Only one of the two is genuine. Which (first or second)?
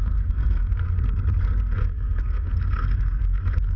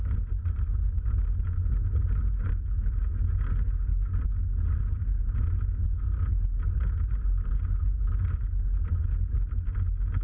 second